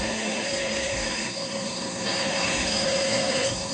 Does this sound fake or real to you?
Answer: fake